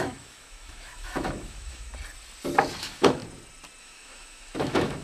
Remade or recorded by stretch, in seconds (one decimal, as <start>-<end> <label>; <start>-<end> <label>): 0.0-1.9 remade; 1.9-2.8 recorded; 2.8-3.2 remade; 3.2-3.8 recorded; 3.8-5.0 remade